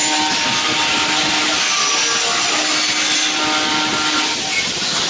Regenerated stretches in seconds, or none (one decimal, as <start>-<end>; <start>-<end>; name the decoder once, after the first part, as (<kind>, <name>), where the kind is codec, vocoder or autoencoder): none